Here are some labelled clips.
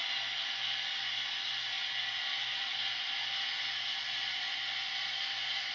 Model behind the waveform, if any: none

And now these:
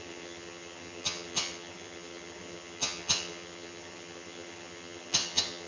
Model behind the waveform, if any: vocoder, HiFi-GAN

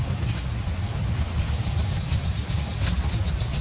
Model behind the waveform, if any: none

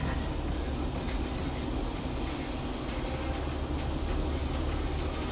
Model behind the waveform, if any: none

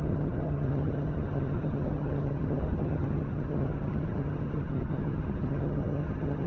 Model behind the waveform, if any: vocoder, HiFi-GAN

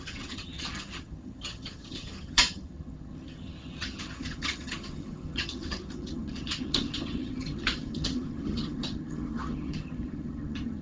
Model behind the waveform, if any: vocoder, HiFi-GAN